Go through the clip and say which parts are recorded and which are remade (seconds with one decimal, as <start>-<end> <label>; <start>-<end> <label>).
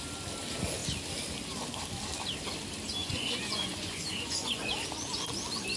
0.0-3.0 recorded; 3.0-4.7 remade; 4.7-5.8 recorded